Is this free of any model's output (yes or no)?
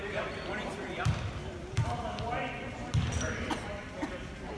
no